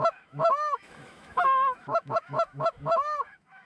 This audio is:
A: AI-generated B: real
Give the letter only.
A